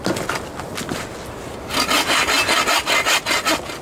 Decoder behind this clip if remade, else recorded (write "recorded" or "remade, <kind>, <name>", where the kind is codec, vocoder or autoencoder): recorded